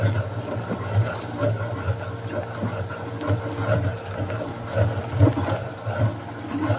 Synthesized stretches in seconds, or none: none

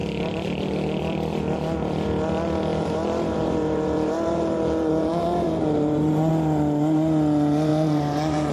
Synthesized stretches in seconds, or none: 2.7-6.3 (vocoder, BigVGAN v2); 7.7-8.5